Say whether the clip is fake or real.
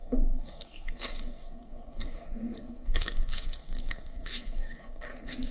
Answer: fake